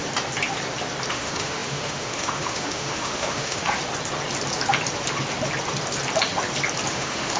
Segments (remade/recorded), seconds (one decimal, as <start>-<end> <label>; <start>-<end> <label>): 0.0-1.1 recorded; 1.1-3.8 remade; 3.8-6.9 recorded; 6.9-7.4 remade